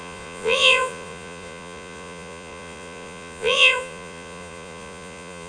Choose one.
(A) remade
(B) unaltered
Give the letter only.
A